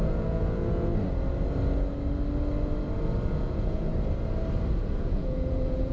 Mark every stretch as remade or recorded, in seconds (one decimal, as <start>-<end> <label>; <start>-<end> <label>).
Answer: 0.0-0.9 remade; 0.9-3.3 recorded; 3.3-3.9 remade; 3.9-5.0 recorded; 5.0-5.9 remade